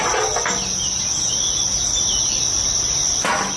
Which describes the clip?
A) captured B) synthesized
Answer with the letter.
A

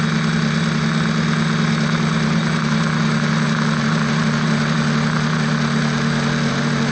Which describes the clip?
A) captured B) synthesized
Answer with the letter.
A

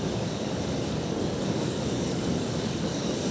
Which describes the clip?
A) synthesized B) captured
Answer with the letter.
A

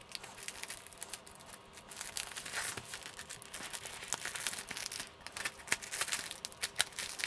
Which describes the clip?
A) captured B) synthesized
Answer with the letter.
A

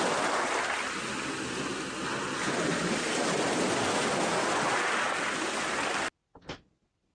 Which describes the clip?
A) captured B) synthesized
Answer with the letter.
A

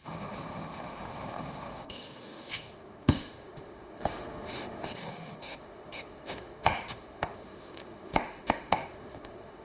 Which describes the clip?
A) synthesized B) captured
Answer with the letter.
A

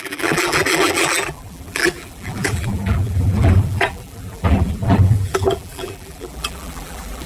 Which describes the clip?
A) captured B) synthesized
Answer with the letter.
B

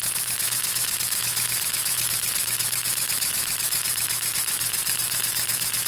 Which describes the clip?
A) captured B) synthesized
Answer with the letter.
B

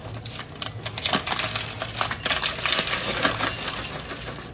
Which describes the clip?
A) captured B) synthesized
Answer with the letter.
A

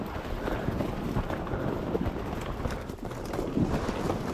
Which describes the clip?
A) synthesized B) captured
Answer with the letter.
B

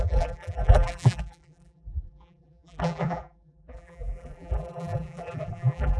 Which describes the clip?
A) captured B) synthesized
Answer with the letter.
B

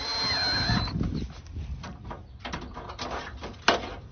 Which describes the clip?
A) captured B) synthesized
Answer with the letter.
A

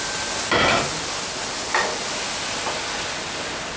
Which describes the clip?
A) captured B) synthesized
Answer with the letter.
A